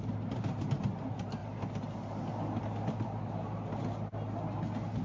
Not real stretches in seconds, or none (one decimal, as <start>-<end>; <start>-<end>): none